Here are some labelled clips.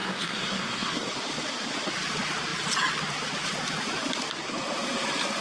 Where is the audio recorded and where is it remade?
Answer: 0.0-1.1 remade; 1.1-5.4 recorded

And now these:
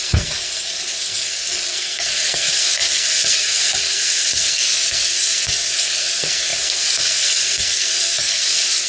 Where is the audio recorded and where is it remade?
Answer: 0.0-8.9 remade

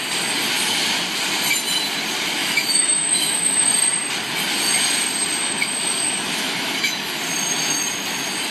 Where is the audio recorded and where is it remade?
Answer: 0.0-2.4 recorded; 2.4-3.7 remade; 3.7-5.4 recorded; 5.4-7.1 remade; 7.1-8.5 recorded

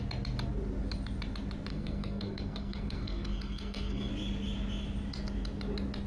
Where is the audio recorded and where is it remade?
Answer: 0.0-1.7 recorded; 1.7-4.1 remade; 4.1-6.1 recorded